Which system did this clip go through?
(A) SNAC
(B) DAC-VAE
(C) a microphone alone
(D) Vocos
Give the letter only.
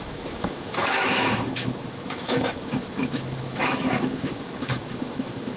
B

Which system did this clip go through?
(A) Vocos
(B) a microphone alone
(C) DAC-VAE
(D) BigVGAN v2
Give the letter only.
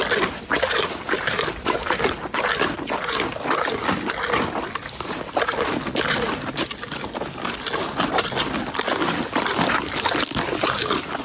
B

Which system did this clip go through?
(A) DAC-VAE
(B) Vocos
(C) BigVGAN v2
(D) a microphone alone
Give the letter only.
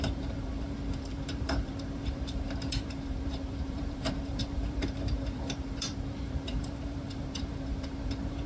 C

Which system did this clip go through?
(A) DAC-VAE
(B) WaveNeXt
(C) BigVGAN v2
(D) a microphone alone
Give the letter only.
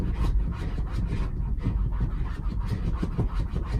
D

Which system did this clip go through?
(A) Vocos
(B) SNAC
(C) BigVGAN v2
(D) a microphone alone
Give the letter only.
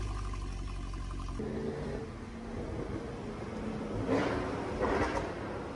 D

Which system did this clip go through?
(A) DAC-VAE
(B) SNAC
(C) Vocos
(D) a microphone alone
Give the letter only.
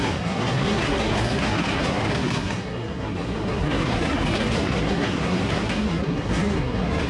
B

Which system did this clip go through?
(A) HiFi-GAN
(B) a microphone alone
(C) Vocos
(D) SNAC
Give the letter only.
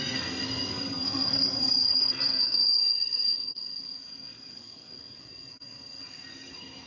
D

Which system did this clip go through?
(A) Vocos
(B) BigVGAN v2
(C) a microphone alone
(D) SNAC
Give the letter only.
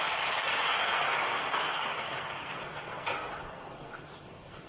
D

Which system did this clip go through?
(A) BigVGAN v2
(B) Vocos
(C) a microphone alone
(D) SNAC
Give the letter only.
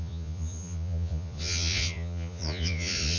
B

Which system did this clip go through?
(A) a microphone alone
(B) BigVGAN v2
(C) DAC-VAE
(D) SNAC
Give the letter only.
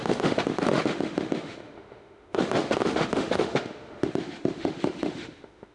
C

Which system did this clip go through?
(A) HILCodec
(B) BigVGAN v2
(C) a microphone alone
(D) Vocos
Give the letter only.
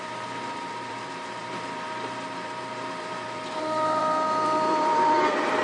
B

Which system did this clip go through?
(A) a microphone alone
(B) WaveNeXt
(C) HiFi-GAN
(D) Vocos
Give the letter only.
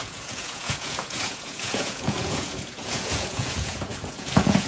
D